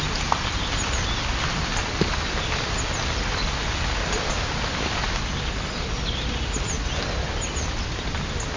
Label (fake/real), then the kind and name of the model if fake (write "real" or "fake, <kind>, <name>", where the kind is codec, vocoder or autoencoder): real